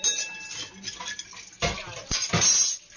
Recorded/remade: recorded